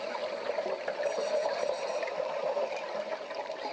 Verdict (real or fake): fake